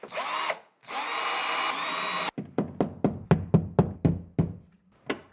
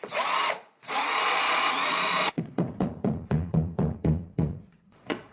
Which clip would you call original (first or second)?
first